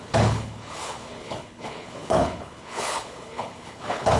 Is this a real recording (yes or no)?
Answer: no